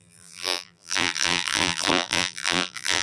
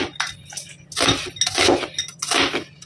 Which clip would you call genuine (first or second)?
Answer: second